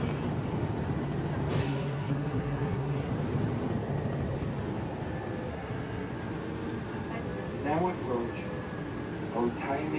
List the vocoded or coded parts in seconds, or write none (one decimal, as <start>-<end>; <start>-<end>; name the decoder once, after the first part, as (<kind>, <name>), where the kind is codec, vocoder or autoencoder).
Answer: 1.6-3.1 (codec, SNAC); 5.5-6.1